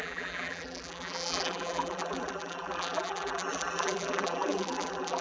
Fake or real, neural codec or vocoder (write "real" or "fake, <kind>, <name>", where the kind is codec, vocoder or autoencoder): fake, vocoder, BigVGAN v2